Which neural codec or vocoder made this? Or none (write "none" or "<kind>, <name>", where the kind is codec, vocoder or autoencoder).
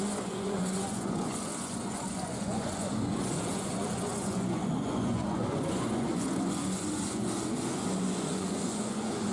vocoder, Vocos